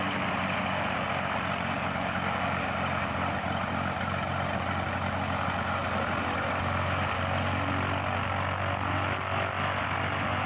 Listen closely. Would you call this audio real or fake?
real